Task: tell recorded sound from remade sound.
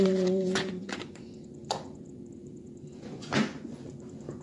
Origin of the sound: remade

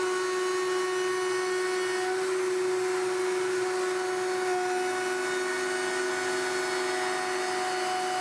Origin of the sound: recorded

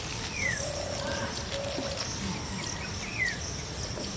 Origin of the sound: recorded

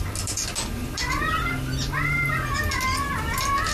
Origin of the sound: recorded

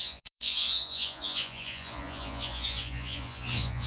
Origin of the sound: remade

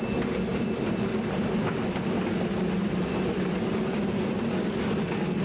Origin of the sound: recorded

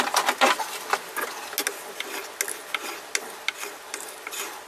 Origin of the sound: recorded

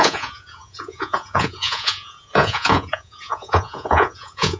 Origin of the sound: remade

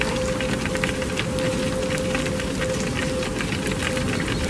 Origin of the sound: recorded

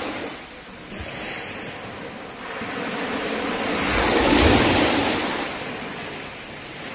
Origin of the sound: recorded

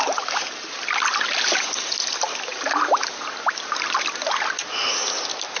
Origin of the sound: recorded